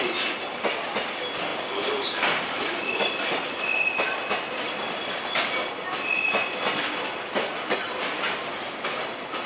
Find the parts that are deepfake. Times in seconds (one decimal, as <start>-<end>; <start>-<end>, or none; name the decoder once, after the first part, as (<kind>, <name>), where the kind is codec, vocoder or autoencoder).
none

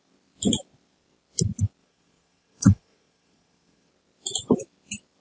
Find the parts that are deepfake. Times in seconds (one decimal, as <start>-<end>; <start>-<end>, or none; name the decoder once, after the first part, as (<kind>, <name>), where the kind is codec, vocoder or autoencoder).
1.8-3.9 (vocoder, Vocos)